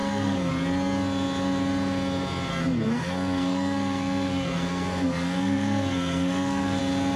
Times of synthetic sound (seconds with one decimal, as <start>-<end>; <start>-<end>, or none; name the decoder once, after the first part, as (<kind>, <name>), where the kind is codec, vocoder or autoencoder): 0.0-0.5 (codec, SNAC); 2.5-6.8